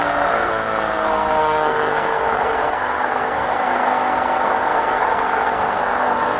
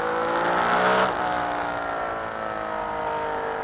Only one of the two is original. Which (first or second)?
second